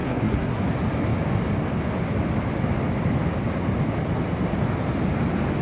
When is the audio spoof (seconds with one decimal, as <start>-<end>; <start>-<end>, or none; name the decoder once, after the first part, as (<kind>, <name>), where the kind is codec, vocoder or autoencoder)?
0.0-0.6 (codec, SNAC)